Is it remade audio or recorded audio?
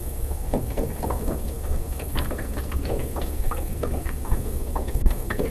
remade